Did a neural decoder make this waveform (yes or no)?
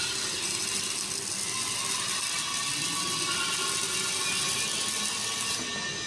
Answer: no